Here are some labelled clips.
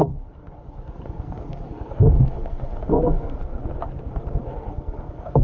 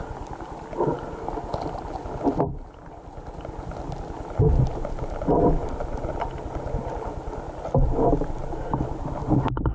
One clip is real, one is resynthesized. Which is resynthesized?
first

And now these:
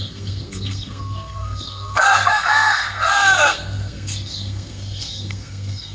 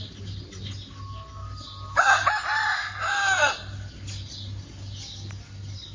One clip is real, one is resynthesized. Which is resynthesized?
first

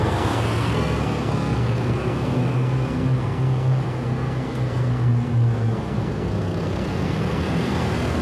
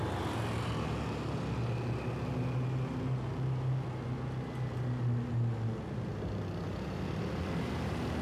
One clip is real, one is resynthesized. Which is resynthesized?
first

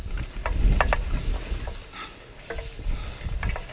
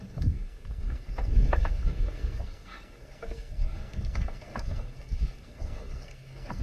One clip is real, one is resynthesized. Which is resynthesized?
second